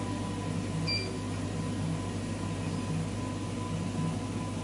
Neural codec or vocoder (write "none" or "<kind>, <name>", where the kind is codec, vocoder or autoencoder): none